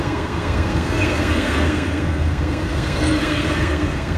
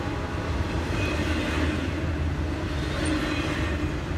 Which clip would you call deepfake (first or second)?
first